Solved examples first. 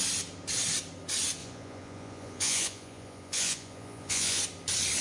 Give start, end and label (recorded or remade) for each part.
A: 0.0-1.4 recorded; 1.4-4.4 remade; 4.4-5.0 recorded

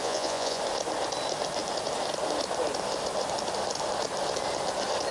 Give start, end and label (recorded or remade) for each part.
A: 0.0-0.6 remade; 0.6-5.1 recorded

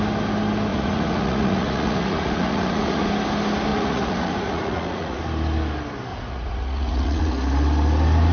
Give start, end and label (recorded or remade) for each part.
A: 0.0-0.7 recorded; 0.7-3.1 remade; 3.1-3.7 recorded; 3.7-5.2 remade; 5.2-6.1 recorded; 6.1-7.3 remade; 7.3-8.3 recorded